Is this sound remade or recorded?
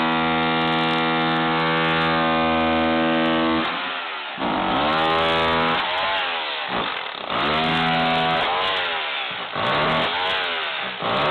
recorded